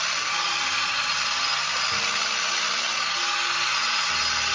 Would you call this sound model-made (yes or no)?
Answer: no